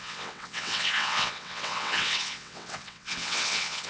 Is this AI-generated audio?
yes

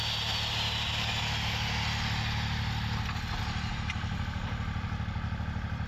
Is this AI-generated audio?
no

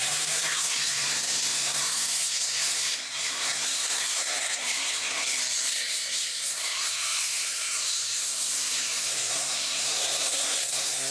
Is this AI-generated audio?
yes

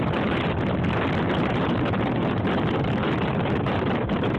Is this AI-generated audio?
yes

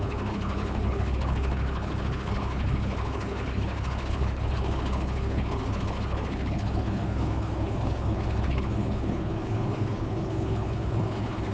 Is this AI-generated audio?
yes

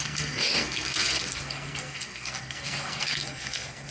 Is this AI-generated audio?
yes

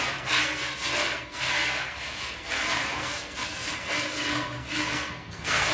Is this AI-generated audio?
yes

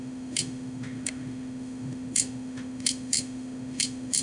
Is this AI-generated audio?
yes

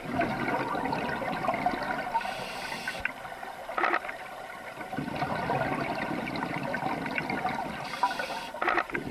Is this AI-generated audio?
no